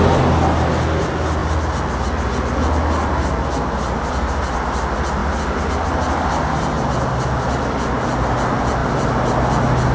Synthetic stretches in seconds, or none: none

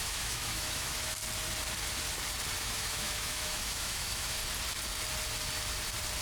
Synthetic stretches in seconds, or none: 0.0-1.2 (autoencoder, DAC-VAE); 2.6-4.4

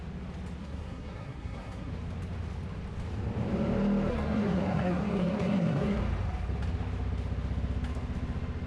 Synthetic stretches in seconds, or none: 0.6-1.9 (codec, SNAC); 4.1-6.0

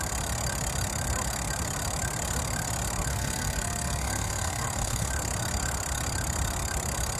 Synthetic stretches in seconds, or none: 3.1-5.1 (codec, SNAC)

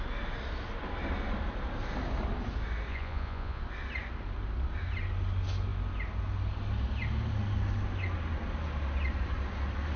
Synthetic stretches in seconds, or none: 2.9-3.6 (vocoder, Vocos)

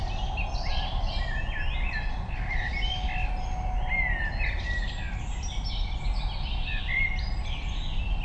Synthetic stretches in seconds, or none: none